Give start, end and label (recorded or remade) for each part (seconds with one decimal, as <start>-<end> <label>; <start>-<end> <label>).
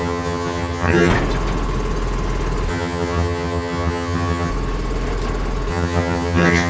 0.0-1.1 remade; 1.1-2.7 recorded; 2.7-4.5 remade; 4.5-5.7 recorded; 5.7-6.7 remade